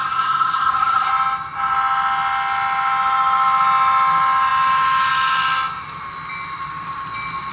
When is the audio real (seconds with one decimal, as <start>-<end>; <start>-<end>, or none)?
1.1-7.5